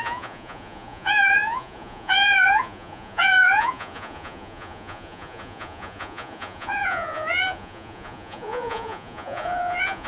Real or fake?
fake